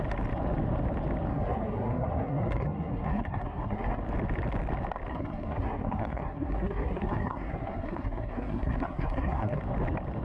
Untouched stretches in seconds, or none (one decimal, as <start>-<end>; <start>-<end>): 0.0-1.3; 4.0-5.1; 9.6-10.2

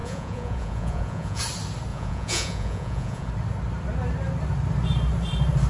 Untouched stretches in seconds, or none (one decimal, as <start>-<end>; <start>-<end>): 1.4-1.9; 3.3-5.7

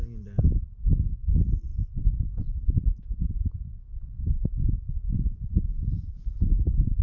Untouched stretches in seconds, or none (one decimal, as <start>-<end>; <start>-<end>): 0.0-7.0

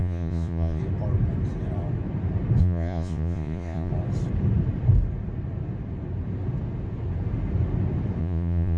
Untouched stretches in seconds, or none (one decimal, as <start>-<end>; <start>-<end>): 0.8-2.6; 3.9-8.2

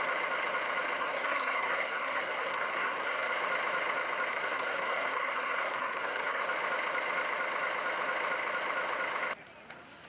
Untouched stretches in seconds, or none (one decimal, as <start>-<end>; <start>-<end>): 0.0-1.0; 3.3-4.3; 6.4-10.1